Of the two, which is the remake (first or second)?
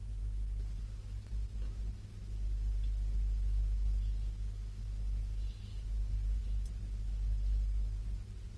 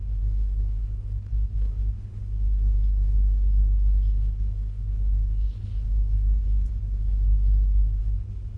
second